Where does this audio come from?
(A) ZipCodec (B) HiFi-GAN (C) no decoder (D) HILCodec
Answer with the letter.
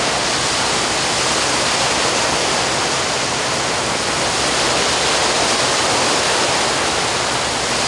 C